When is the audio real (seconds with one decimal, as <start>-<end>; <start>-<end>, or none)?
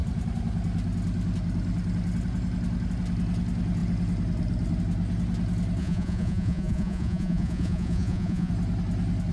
0.0-5.8; 8.5-9.3